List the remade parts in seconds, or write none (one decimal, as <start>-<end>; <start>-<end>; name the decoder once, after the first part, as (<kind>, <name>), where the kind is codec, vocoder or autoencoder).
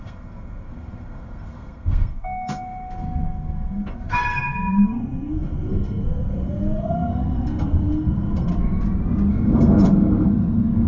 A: 0.0-8.5 (codec, SNAC); 9.3-10.9